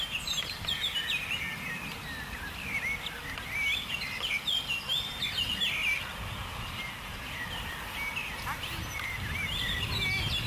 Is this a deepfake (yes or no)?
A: no